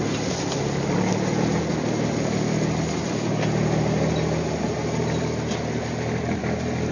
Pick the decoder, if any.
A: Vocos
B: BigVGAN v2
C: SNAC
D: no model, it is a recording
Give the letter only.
D